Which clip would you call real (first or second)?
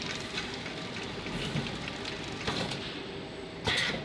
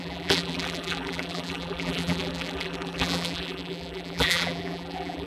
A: first